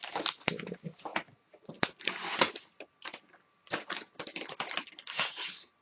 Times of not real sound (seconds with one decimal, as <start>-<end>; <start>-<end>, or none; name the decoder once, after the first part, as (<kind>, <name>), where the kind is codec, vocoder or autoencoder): none